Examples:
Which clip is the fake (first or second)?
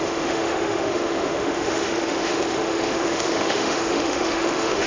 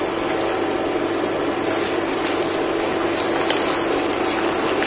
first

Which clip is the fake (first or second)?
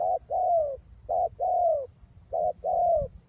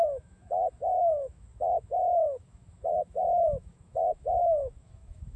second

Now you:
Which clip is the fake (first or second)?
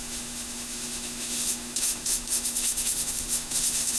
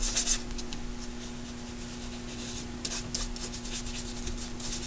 first